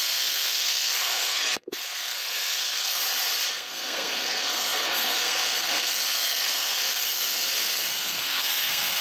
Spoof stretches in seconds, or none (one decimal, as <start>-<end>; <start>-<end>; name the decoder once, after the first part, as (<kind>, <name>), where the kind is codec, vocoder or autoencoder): 0.0-3.0 (codec, SNAC); 3.5-9.0